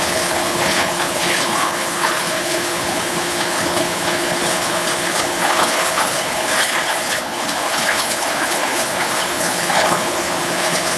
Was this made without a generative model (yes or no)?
no